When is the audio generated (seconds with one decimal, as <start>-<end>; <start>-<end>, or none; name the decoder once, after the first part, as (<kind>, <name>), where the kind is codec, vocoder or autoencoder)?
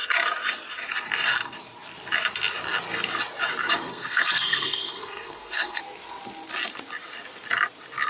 3.9-5.8 (codec, SNAC)